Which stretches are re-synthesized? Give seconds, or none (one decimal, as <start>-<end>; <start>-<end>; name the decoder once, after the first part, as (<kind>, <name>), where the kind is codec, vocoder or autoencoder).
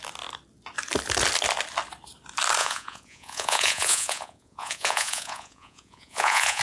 2.6-6.6 (vocoder, Vocos)